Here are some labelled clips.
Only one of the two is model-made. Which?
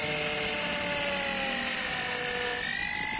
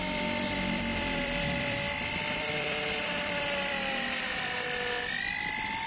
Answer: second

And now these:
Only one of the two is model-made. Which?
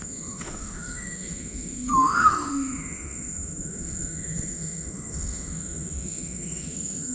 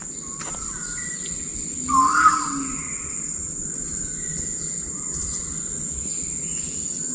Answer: first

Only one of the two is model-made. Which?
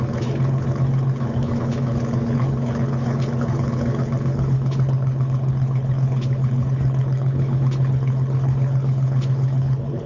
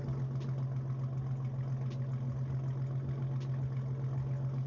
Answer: first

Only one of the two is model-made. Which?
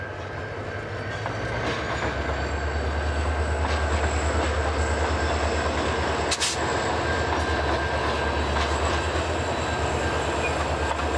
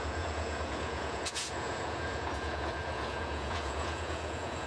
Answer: second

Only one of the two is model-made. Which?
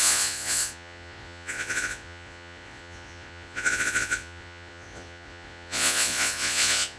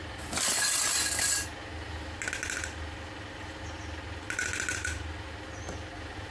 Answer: first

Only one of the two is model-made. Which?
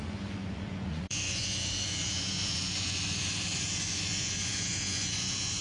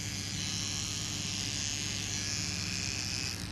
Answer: first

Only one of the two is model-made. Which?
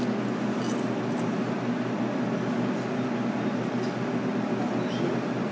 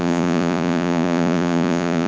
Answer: second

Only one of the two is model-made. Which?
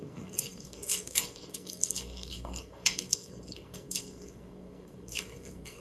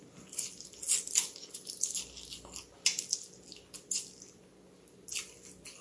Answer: first